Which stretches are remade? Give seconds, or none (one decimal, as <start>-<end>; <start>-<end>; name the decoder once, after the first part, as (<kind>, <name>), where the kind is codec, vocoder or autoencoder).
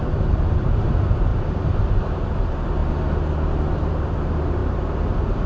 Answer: 0.0-2.8 (vocoder, BigVGAN v2); 3.7-5.5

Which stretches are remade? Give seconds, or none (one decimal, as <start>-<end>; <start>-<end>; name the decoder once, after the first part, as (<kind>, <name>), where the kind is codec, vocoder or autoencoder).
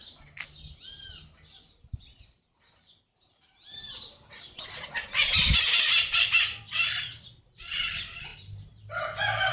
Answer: none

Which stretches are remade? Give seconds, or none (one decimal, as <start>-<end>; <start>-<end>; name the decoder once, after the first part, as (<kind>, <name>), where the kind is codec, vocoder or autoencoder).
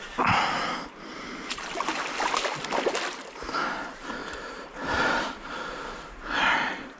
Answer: 4.2-7.0 (vocoder, BigVGAN v2)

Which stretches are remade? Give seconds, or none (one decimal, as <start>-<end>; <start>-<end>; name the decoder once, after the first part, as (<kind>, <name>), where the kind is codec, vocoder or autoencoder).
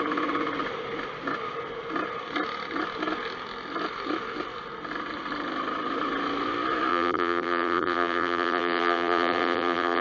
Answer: 6.9-10.0 (vocoder, BigVGAN v2)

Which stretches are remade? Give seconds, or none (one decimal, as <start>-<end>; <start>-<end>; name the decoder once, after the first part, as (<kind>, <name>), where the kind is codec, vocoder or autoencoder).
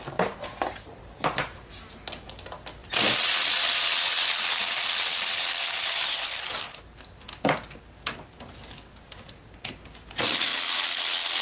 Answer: 2.8-6.8 (vocoder, BigVGAN v2)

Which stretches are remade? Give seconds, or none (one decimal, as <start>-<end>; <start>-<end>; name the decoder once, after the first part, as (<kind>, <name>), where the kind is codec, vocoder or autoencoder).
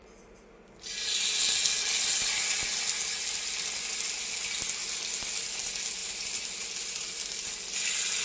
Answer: 6.0-6.5 (vocoder, BigVGAN v2)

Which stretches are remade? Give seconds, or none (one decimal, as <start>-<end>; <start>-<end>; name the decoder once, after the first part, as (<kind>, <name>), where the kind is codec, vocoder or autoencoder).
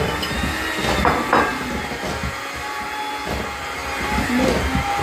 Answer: none